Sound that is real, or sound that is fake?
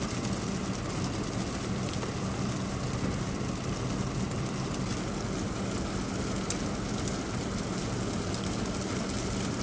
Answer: real